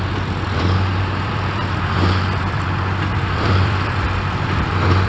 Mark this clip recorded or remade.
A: remade